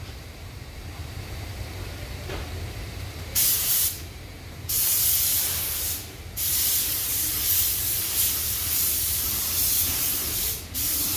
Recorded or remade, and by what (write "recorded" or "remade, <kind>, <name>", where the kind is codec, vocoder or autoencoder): remade, vocoder, BigVGAN v2